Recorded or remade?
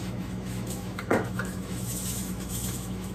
remade